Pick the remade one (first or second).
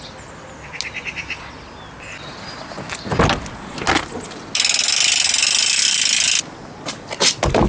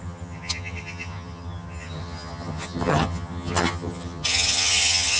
second